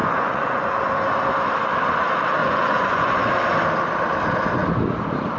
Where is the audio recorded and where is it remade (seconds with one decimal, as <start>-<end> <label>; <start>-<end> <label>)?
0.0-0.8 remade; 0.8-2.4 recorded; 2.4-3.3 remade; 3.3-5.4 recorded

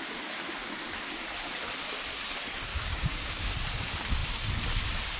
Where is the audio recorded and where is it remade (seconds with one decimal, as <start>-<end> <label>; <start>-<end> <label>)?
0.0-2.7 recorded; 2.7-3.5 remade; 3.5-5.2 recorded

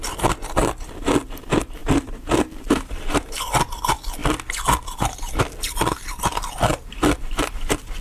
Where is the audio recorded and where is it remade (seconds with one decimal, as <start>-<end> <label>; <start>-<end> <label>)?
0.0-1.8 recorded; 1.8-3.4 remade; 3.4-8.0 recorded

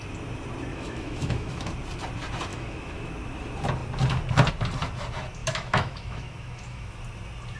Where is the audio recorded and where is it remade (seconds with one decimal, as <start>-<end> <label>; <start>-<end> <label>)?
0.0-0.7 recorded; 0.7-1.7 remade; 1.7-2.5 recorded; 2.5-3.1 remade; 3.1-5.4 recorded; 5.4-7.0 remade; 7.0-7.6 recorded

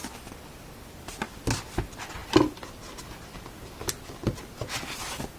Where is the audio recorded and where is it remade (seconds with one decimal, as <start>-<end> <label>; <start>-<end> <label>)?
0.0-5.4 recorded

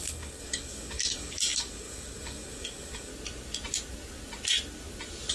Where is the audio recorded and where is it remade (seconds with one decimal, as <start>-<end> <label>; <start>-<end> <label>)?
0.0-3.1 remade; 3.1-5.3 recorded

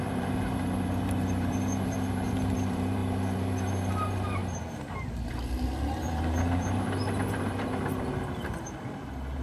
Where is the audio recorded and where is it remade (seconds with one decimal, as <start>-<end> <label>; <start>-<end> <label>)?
0.0-4.4 remade; 4.4-5.2 recorded; 5.2-9.4 remade

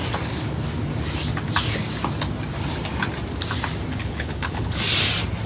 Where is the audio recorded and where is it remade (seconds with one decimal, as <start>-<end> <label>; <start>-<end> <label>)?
0.0-4.0 recorded; 4.0-4.8 remade; 4.8-5.5 recorded